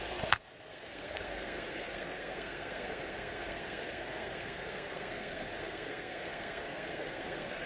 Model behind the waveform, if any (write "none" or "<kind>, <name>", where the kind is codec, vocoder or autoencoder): codec, SNAC